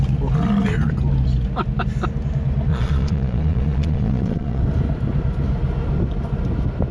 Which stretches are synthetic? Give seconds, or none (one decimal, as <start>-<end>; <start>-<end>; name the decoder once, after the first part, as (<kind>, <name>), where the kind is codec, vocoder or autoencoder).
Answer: 2.7-4.6 (vocoder, Vocos)

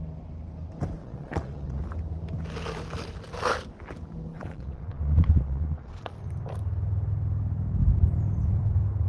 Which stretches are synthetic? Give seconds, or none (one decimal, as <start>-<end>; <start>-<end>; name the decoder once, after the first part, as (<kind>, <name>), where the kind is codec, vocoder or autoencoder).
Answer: 1.0-1.8 (vocoder, Vocos); 4.3-6.1

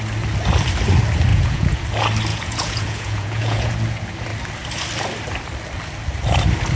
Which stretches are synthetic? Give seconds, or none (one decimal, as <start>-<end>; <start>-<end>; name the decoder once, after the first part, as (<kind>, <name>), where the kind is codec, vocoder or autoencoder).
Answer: 1.3-1.8 (vocoder, Vocos); 2.3-3.7

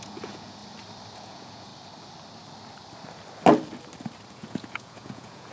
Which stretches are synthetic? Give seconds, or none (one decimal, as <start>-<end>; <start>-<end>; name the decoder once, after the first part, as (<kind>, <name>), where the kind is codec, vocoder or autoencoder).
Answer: 0.0-0.6 (vocoder, Vocos); 1.2-1.7; 4.3-5.5

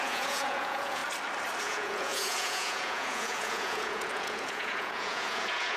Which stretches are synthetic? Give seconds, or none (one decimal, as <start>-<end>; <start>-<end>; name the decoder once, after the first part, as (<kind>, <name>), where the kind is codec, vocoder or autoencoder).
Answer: 0.0-1.0 (vocoder, Vocos); 1.6-5.8

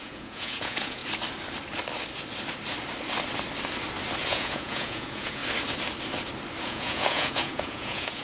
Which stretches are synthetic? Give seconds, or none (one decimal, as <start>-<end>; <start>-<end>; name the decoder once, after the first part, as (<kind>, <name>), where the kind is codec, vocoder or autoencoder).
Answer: 0.0-1.0 (vocoder, Vocos); 4.2-5.4; 6.6-8.2

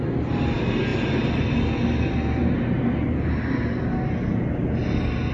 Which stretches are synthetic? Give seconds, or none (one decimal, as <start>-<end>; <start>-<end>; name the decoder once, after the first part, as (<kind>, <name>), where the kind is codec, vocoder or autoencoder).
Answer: none

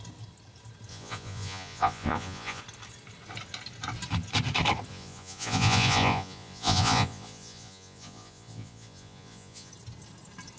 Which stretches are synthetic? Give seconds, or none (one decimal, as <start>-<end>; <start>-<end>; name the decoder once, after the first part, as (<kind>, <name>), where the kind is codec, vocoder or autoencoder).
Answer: 0.9-2.6 (vocoder, Vocos); 4.9-9.7